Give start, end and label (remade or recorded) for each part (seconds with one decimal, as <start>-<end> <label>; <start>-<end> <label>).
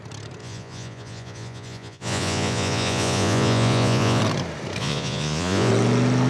0.0-0.4 recorded; 0.4-4.2 remade; 4.2-4.8 recorded; 4.8-5.7 remade; 5.7-6.3 recorded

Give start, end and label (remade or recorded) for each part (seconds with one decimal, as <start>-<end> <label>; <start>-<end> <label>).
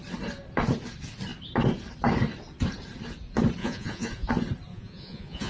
0.0-3.6 recorded; 3.6-4.3 remade; 4.3-4.7 recorded; 4.7-5.5 remade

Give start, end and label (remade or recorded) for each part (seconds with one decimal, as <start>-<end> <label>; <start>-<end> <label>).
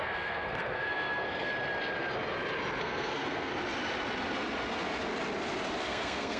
0.0-1.5 remade; 1.5-2.8 recorded; 2.8-3.5 remade; 3.5-5.8 recorded; 5.8-6.4 remade